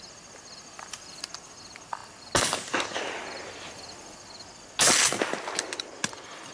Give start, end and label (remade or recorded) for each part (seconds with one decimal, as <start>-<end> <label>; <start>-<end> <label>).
0.0-6.5 recorded